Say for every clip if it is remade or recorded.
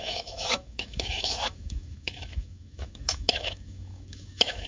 remade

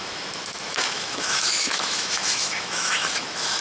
remade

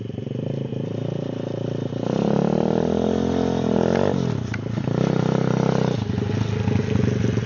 recorded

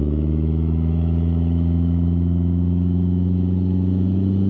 remade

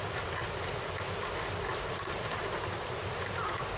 recorded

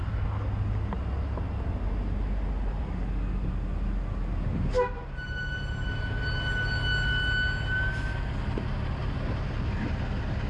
recorded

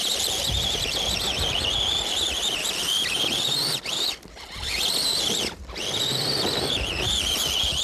recorded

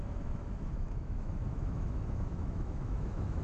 remade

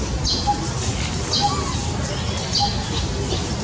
recorded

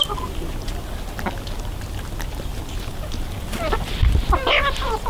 recorded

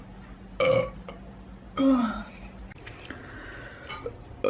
recorded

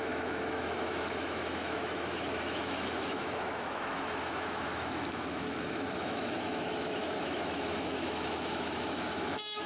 remade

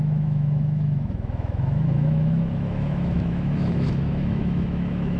remade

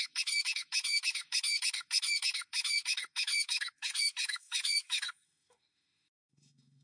remade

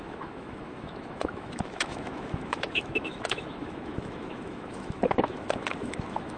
remade